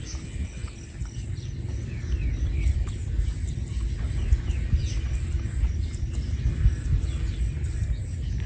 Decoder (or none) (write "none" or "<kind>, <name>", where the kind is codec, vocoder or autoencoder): none